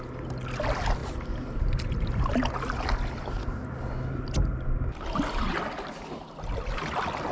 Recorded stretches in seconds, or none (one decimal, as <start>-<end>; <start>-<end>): 0.0-7.3